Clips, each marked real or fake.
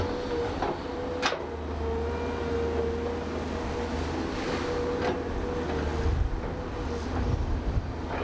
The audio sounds real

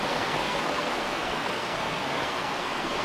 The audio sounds fake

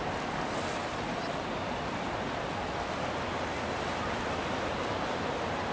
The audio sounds real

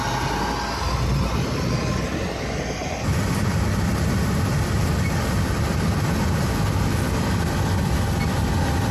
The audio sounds real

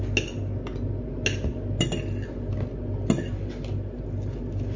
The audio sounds real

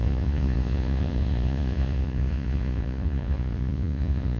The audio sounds fake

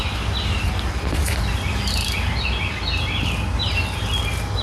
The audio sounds real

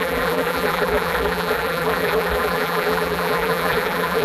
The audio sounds fake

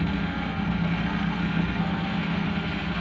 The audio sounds fake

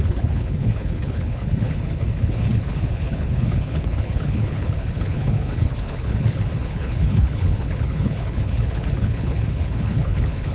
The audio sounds fake